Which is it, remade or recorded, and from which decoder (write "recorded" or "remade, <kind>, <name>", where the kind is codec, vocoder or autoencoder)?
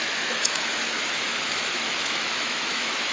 remade, autoencoder, DAC-VAE